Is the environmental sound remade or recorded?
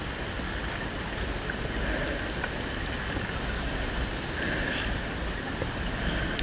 recorded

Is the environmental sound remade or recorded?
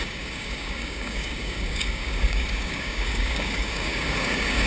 remade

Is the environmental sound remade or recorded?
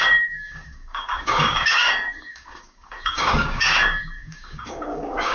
remade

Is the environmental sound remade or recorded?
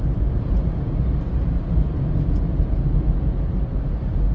recorded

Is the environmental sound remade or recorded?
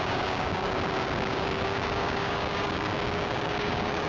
remade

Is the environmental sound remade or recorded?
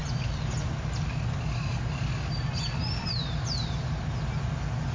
recorded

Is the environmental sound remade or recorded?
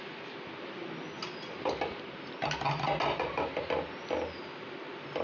recorded